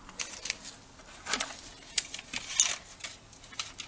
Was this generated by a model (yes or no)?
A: no